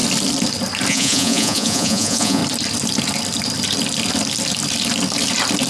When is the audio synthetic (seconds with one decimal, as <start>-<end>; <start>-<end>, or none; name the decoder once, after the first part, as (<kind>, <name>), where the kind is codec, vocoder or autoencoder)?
0.9-2.4 (vocoder, Vocos)